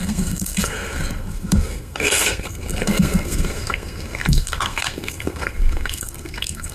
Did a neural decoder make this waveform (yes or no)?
yes